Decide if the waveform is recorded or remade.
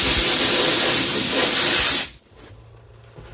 recorded